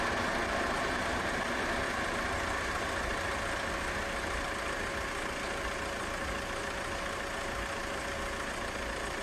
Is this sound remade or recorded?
recorded